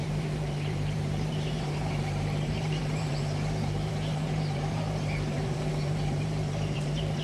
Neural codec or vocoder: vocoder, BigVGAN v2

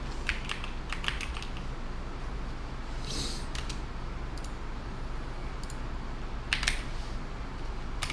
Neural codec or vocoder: none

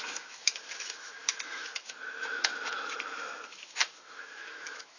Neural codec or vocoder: autoencoder, DAC-VAE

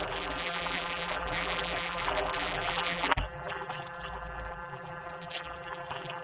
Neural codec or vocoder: vocoder, BigVGAN v2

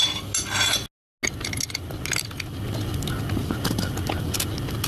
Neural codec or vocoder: none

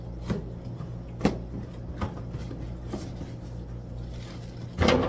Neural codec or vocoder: none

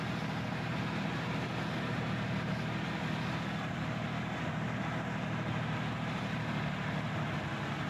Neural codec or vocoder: none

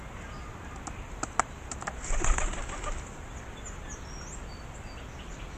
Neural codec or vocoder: none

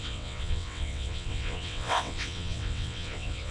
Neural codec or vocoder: vocoder, WaveNeXt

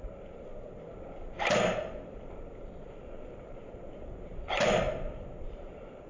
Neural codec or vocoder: vocoder, BigVGAN v2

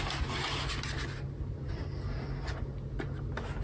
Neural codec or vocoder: none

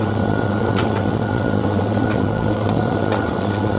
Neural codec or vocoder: vocoder, WaveNeXt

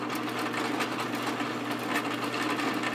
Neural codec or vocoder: none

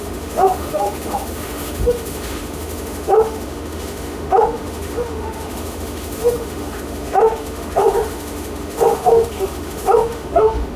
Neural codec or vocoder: autoencoder, DAC-VAE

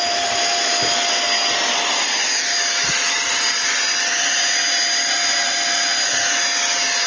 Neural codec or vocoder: none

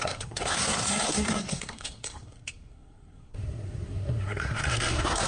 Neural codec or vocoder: codec, SNAC